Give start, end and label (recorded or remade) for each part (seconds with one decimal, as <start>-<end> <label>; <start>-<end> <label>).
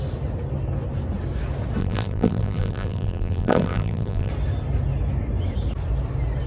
0.0-1.8 recorded; 1.8-4.3 remade; 4.3-6.5 recorded